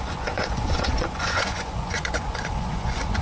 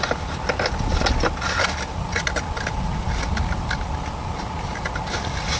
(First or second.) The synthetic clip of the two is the first